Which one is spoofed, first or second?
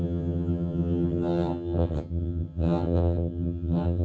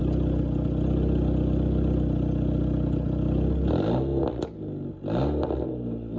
first